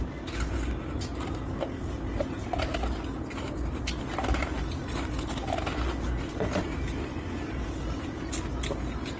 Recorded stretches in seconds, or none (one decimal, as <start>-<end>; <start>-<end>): 0.0-9.2